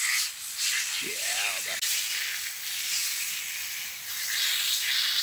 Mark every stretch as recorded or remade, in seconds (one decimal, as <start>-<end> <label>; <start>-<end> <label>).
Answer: 0.0-5.2 recorded